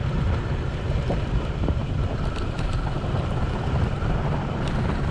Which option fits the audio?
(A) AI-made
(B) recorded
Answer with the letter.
A